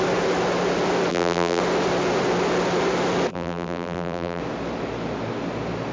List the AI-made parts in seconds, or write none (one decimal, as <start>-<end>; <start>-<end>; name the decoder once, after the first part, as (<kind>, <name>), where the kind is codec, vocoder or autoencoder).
1.1-1.6 (vocoder, BigVGAN v2); 3.3-4.4